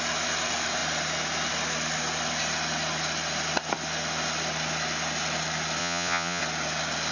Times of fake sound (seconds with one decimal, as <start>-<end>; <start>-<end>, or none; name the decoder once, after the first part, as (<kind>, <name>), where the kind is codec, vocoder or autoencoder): 5.8-6.4 (vocoder, Vocos)